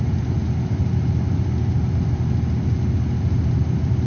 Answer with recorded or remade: recorded